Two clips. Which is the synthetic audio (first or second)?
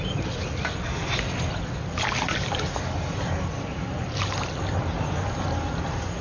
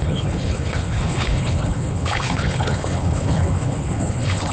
second